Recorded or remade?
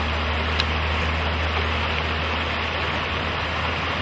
recorded